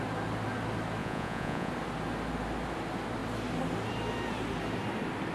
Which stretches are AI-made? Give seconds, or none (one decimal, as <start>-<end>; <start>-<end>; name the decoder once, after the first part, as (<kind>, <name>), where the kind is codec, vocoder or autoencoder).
1.0-1.7 (vocoder, Vocos)